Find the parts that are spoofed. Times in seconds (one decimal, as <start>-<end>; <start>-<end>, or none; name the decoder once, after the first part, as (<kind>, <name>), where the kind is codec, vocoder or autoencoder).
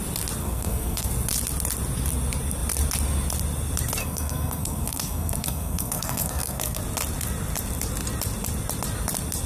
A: 0.4-1.1 (codec, SNAC); 4.0-6.8